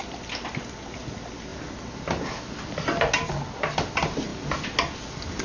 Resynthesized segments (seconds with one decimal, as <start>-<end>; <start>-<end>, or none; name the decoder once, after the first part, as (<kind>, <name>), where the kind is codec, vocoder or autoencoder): none